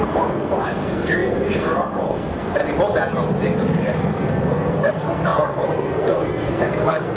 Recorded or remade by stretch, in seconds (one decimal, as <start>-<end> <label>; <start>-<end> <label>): 0.0-2.6 remade; 2.6-3.8 recorded; 3.8-7.2 remade